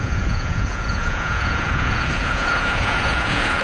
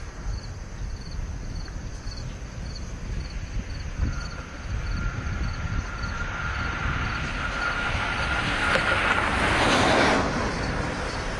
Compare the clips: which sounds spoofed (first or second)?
first